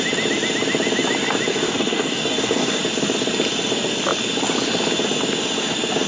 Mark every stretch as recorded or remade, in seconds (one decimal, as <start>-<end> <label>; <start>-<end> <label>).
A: 0.0-1.5 recorded; 1.5-2.8 remade; 2.8-6.1 recorded